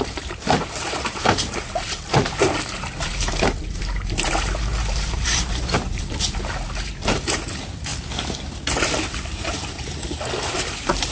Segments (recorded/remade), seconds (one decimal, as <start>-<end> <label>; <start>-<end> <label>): 0.0-7.9 remade; 7.9-10.6 recorded; 10.6-11.1 remade